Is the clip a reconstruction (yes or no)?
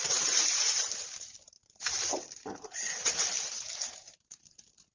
yes